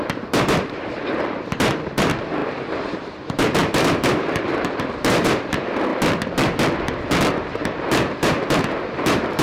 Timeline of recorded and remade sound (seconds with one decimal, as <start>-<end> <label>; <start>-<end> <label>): 0.0-5.9 remade; 5.9-7.3 recorded; 7.3-9.4 remade